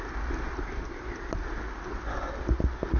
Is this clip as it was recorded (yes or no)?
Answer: yes